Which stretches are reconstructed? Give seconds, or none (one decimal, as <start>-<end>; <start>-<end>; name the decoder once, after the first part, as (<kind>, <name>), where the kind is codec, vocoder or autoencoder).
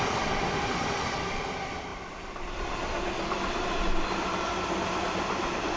none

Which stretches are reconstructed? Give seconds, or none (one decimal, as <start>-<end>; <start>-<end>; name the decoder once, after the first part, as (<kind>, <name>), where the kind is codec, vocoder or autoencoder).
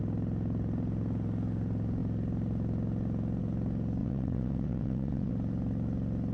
4.0-5.3 (vocoder, WaveNeXt)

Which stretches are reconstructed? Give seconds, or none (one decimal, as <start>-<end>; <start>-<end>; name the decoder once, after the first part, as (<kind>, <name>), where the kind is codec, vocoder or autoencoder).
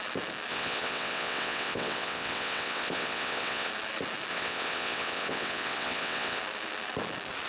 0.5-3.7 (vocoder, WaveNeXt); 4.3-6.4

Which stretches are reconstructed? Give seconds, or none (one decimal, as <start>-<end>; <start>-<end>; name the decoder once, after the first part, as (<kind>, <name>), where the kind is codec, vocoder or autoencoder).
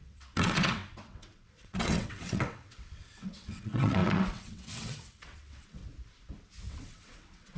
0.0-5.8 (vocoder, WaveNeXt); 6.7-7.6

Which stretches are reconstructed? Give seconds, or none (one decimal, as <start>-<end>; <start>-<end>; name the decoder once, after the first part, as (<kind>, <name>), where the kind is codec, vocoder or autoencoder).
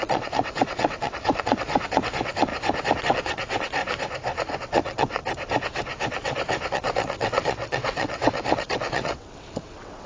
0.0-2.5 (vocoder, WaveNeXt); 3.0-3.8; 4.6-5.2; 6.7-10.1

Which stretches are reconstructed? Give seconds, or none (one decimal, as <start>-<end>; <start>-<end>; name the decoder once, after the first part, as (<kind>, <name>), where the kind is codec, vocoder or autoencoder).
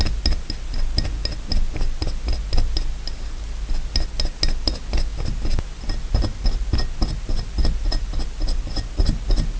none